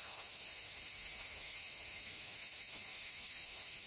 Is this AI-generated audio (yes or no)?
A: yes